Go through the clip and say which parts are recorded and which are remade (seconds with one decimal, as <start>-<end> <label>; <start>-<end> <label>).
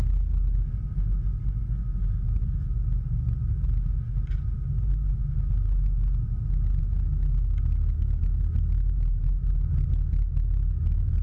0.0-11.2 recorded